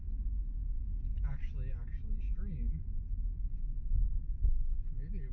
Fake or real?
real